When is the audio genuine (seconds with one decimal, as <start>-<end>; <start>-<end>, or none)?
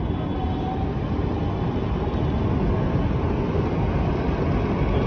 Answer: 0.0-5.1